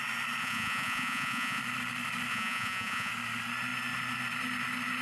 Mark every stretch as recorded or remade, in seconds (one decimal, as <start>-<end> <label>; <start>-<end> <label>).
0.0-0.4 recorded; 0.4-1.6 remade; 1.6-2.3 recorded; 2.3-3.1 remade; 3.1-5.0 recorded